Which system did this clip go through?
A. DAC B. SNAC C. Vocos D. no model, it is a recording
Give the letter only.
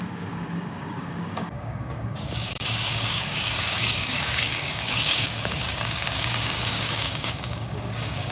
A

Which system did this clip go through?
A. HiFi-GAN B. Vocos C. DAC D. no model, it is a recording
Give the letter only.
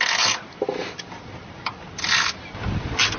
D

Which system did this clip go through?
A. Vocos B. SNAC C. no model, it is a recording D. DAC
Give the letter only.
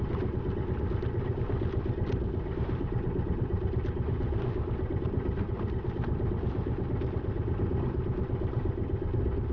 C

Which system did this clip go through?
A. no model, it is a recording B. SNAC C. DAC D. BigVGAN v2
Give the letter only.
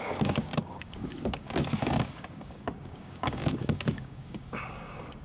C